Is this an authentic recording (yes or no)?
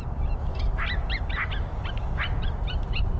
yes